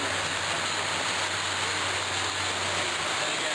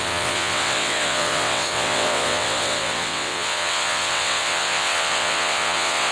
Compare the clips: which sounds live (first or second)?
first